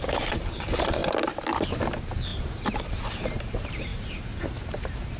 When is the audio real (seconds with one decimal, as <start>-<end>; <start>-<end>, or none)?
1.0-1.8